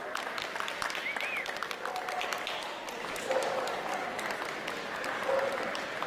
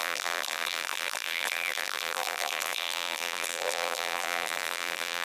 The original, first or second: first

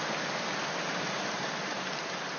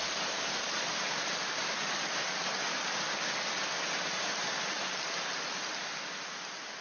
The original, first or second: second